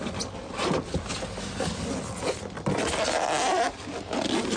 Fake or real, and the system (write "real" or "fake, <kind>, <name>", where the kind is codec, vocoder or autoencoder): real